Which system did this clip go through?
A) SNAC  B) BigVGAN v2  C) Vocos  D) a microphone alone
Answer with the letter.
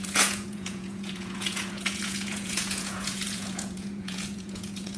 C